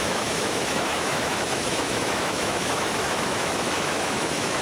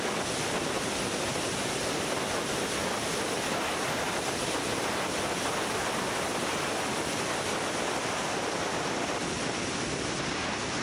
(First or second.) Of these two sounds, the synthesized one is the first